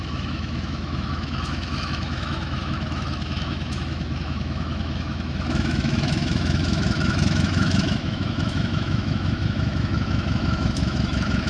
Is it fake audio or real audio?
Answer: fake